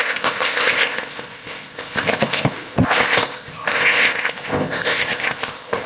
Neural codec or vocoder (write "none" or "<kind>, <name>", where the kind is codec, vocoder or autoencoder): codec, ZipCodec